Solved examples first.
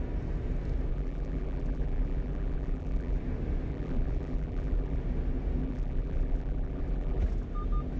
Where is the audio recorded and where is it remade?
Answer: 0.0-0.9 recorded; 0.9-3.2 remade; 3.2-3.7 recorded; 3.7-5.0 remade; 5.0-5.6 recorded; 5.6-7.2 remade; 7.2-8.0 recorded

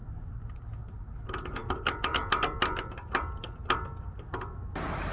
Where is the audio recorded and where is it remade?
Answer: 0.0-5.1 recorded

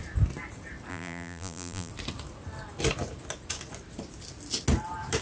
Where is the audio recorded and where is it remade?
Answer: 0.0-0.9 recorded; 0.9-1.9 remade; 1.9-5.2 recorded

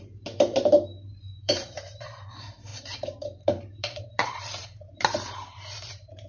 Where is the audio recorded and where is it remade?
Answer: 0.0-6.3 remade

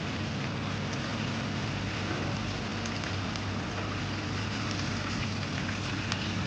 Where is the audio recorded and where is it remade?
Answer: 0.0-6.5 recorded

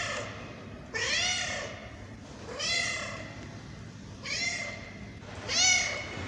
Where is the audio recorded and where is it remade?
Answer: 0.0-6.3 recorded

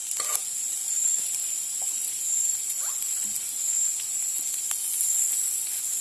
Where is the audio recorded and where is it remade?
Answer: 0.0-6.0 recorded